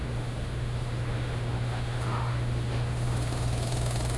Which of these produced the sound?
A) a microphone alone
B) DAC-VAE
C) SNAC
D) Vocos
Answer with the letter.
B